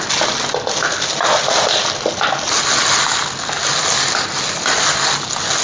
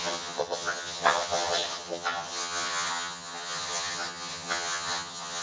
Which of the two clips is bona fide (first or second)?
first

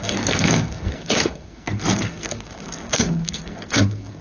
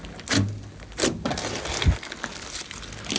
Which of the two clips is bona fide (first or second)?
second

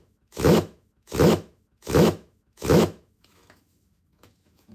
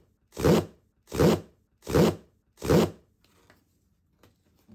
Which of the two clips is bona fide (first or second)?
second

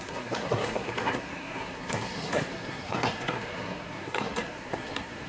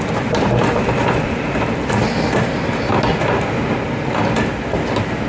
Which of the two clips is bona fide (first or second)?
second